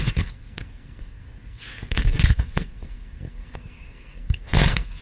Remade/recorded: remade